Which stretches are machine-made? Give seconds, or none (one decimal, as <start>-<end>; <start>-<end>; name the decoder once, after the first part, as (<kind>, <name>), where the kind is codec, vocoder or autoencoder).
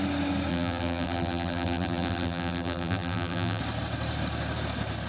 0.5-3.6 (vocoder, BigVGAN v2)